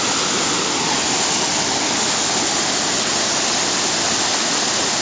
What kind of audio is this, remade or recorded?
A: recorded